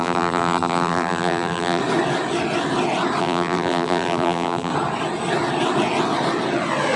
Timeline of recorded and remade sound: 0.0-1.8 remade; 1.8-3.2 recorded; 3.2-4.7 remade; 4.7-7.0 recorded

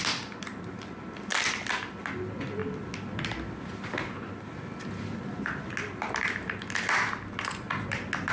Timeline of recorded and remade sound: 0.0-8.3 recorded

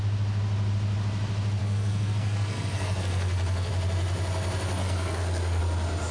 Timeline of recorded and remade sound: 0.0-1.6 recorded; 1.6-3.7 remade; 3.7-4.8 recorded; 4.8-5.6 remade; 5.6-6.1 recorded

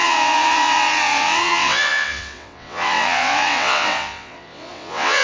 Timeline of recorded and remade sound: 0.0-5.2 remade

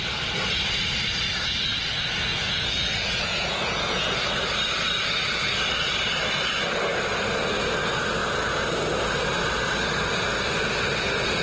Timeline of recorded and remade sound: 0.0-2.3 recorded; 2.3-4.3 remade; 4.3-11.4 recorded

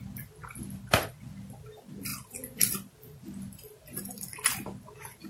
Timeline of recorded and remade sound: 0.0-5.3 recorded

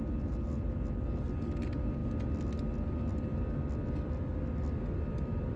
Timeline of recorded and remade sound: 0.0-5.6 recorded

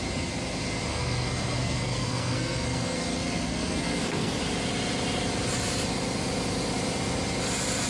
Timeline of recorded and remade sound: 0.0-0.9 recorded; 0.9-4.4 remade; 4.4-7.9 recorded